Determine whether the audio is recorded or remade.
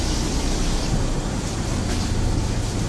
remade